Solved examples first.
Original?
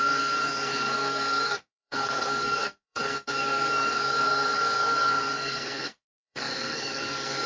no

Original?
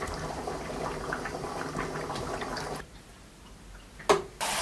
yes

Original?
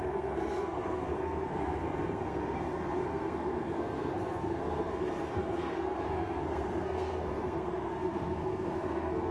no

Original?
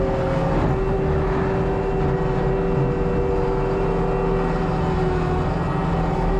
yes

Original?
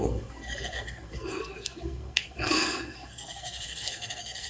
no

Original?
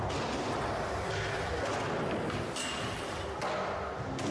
yes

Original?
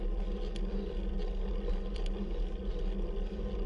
yes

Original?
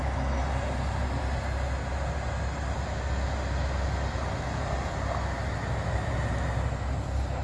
yes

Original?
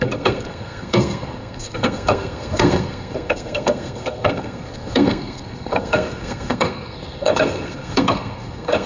no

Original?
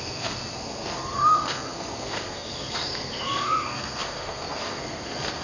no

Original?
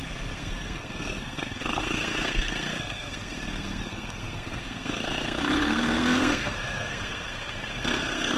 no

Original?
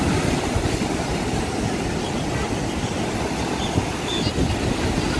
yes